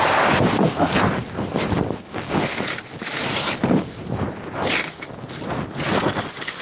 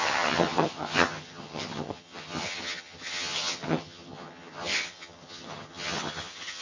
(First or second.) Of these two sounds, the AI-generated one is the second